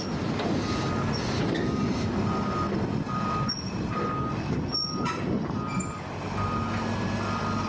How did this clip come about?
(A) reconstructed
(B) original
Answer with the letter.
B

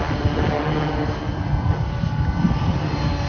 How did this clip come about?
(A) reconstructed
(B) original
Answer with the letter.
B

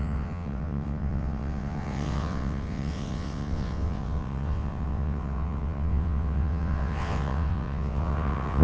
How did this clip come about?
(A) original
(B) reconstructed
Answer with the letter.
B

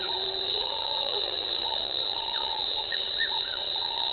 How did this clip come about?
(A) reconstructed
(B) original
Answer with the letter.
A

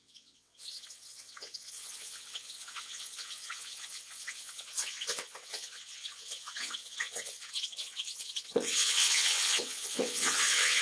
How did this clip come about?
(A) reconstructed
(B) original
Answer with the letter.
A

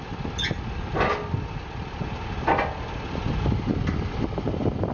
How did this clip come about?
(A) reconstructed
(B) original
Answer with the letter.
B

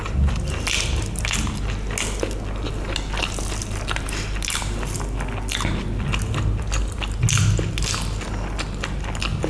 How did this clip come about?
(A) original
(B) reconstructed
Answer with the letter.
A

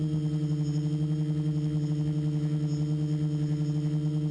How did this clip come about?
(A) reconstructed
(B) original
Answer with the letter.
B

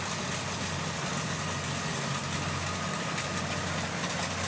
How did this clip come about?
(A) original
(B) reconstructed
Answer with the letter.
A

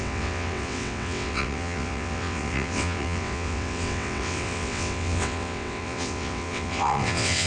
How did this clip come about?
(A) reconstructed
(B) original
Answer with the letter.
A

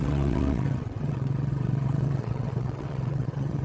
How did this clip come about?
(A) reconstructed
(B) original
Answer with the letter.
A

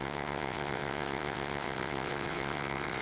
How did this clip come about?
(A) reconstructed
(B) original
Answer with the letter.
A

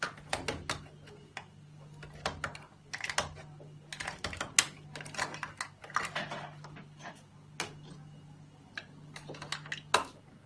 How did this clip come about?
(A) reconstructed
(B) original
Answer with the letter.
B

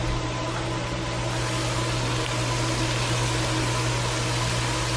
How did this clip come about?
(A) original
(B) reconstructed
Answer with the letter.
A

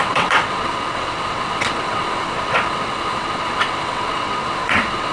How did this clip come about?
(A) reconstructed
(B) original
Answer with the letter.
A